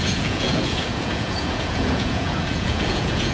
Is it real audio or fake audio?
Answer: fake